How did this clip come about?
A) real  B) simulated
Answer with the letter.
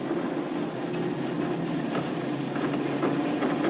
A